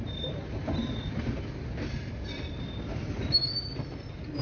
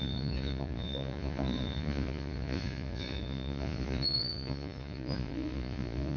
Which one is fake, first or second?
second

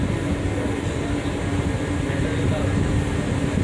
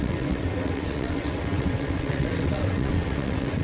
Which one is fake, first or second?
second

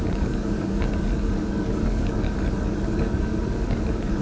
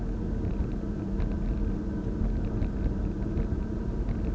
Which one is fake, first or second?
first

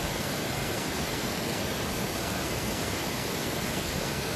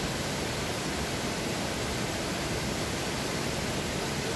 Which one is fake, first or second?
first